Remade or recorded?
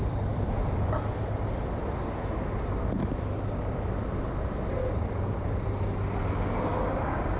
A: recorded